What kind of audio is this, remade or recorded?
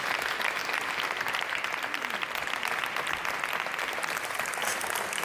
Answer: recorded